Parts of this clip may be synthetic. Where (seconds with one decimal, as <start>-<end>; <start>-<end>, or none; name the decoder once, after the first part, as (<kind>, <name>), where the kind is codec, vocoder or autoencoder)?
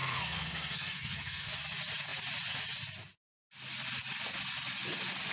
0.0-1.5 (codec, SNAC)